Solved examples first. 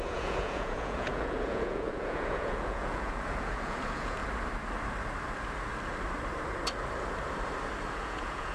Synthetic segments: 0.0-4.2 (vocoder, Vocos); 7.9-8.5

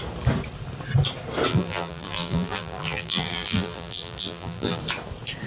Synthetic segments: 1.5-4.8 (vocoder, BigVGAN v2)

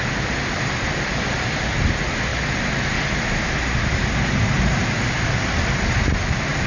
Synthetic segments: none